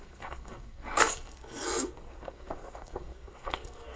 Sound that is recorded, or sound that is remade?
remade